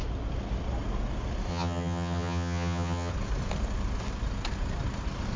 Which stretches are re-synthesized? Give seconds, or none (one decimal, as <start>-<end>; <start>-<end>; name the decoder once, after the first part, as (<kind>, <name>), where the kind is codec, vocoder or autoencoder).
1.5-3.1 (vocoder, HiFi-GAN)